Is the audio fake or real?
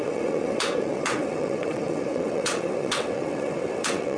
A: fake